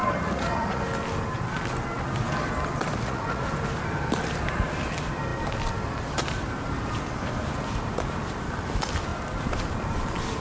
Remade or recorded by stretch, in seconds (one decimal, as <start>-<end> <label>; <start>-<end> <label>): 0.0-0.8 remade; 0.8-2.9 recorded; 2.9-3.5 remade; 3.5-10.4 recorded